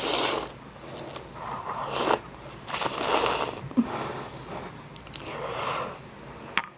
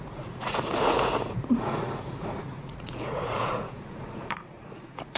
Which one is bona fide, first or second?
first